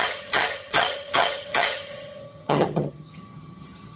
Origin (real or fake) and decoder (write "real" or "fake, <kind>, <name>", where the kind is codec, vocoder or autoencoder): fake, vocoder, HiFi-GAN